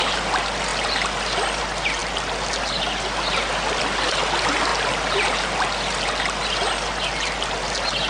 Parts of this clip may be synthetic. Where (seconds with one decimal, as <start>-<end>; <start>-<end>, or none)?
none